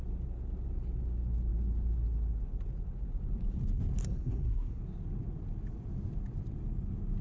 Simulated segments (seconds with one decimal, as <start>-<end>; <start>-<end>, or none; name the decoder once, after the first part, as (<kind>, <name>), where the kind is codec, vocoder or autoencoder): 4.0-4.8 (codec, SNAC)